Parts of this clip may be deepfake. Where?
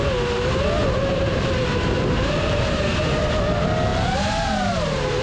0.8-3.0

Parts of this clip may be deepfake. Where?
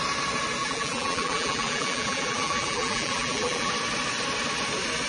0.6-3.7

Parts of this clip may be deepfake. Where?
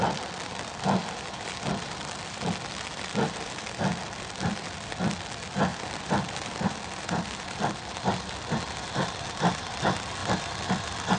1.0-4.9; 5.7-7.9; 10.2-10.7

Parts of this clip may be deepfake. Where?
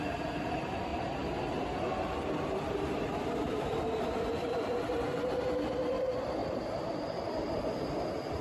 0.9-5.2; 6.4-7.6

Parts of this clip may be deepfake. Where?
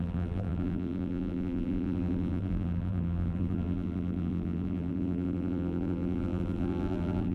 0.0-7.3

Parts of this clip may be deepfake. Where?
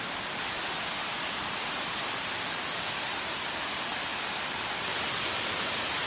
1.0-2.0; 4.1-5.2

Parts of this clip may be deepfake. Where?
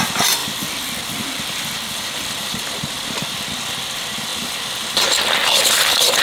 0.0-4.3; 5.6-6.2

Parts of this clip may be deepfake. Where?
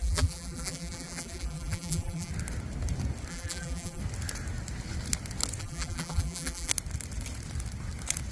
0.0-2.3; 3.3-4.0; 5.6-6.7